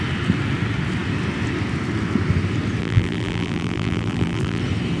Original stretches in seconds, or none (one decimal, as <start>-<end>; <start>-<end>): 0.0-2.8; 4.6-5.0